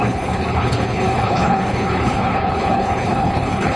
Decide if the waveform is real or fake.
fake